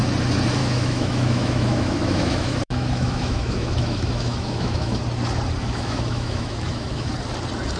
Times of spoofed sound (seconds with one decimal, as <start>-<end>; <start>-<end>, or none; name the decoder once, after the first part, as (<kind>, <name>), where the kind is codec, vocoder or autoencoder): 0.6-5.0 (autoencoder, DAC-VAE); 5.6-7.1